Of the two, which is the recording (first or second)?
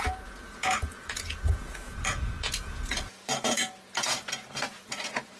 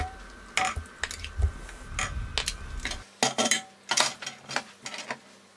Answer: second